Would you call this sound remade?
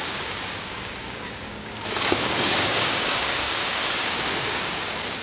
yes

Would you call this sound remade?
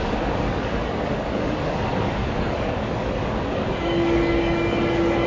yes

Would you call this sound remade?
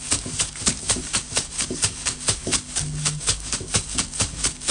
yes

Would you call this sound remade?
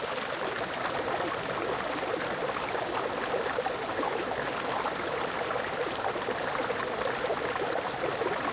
no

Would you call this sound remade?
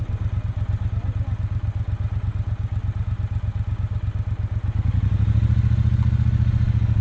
no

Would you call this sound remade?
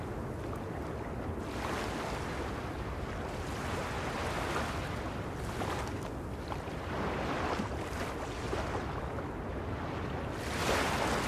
no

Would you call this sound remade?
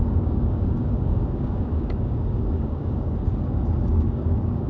yes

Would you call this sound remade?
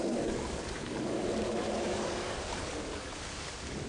yes